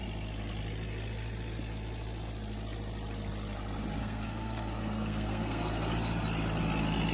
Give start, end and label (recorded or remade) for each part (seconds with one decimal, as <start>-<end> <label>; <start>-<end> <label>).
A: 0.0-4.0 recorded; 4.0-5.7 remade; 5.7-7.1 recorded